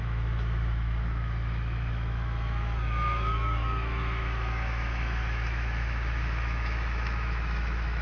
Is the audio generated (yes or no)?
yes